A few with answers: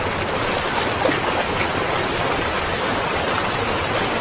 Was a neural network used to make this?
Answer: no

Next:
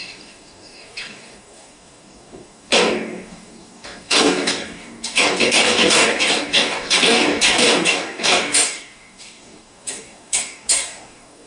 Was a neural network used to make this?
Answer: yes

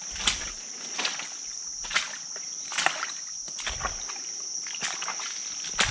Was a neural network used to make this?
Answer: no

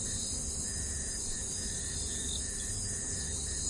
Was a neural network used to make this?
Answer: no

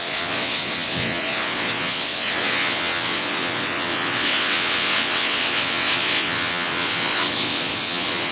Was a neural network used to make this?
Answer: yes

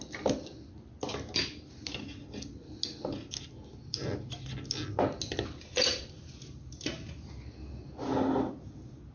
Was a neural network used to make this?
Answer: no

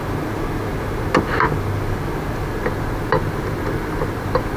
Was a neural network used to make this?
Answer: no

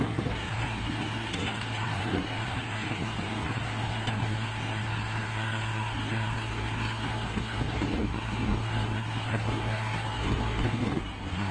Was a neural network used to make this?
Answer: yes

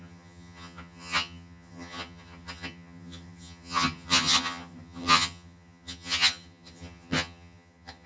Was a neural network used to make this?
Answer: yes